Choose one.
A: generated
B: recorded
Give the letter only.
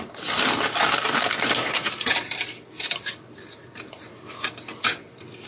A